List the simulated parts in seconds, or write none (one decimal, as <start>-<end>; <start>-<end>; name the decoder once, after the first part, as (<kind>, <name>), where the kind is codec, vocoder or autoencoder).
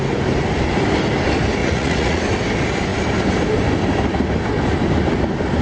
1.6-2.2 (vocoder, Vocos)